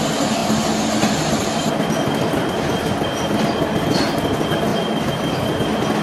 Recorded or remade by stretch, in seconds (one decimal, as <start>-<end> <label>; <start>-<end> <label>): 0.0-6.0 recorded